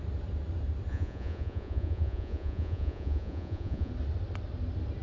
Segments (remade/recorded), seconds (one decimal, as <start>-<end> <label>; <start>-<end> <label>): 0.0-0.9 recorded; 0.9-3.9 remade; 3.9-5.0 recorded